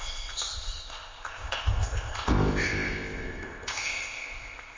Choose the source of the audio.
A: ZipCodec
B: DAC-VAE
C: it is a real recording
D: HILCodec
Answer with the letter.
A